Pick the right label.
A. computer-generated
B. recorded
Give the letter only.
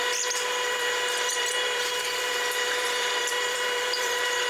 A